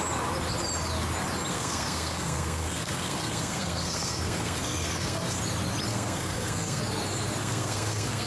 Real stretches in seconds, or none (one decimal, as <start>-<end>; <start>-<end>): 0.0-1.5; 5.4-5.9; 6.8-7.4